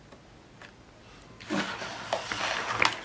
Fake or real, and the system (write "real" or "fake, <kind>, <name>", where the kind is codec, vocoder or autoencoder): real